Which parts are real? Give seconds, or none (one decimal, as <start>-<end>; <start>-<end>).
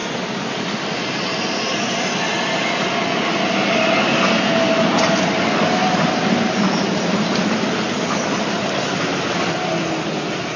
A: 0.0-5.8; 8.8-10.6